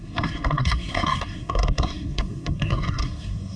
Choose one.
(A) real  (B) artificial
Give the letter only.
B